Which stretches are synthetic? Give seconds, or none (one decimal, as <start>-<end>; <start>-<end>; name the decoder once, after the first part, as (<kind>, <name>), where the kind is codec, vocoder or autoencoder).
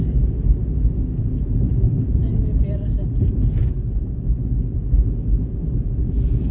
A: none